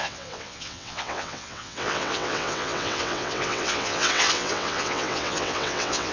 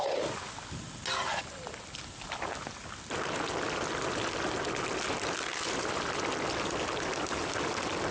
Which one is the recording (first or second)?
second